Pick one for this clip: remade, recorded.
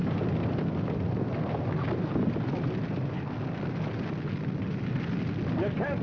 recorded